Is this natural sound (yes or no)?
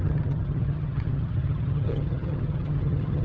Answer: no